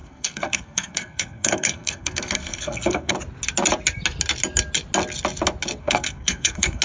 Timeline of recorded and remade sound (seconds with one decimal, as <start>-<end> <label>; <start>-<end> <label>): 0.0-3.1 remade; 3.1-5.8 recorded; 5.8-6.8 remade